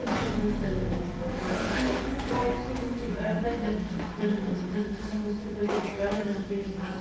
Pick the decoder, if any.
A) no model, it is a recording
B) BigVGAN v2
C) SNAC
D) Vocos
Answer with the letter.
C